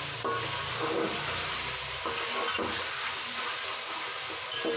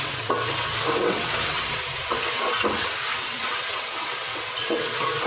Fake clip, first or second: second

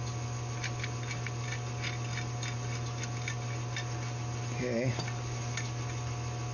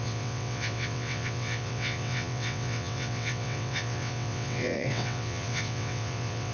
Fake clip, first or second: second